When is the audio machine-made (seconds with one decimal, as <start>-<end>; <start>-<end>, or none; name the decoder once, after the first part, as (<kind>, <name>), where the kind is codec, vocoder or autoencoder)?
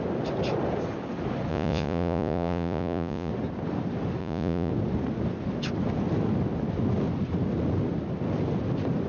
1.5-3.3 (vocoder, Vocos); 4.2-4.7